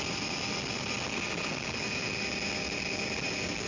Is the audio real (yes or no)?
yes